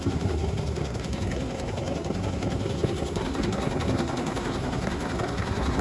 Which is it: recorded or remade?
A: remade